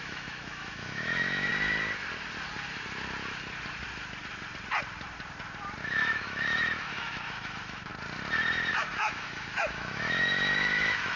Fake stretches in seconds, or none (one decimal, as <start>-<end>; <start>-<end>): 0.0-1.5; 5.8-7.9; 8.7-11.2